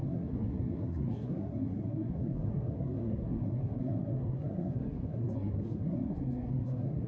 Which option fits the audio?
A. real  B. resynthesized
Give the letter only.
B